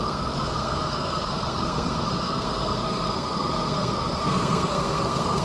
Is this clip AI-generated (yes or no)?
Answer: yes